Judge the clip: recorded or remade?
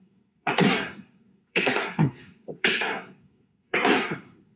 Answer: remade